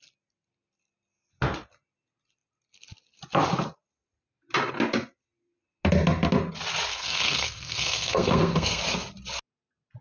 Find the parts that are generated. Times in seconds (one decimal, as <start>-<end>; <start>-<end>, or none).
6.9-8.8